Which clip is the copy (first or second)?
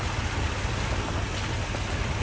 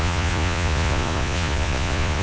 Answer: second